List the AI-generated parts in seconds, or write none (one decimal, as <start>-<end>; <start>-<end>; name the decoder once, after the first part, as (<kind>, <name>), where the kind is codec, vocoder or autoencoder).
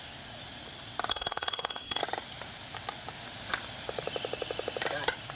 1.1-2.0 (codec, SNAC)